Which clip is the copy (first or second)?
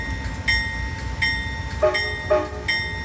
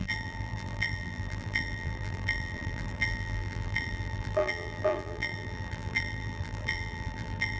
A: second